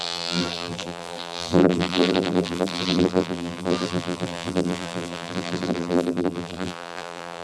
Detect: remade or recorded remade